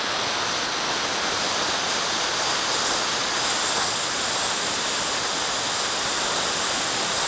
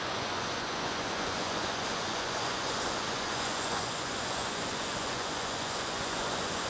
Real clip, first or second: first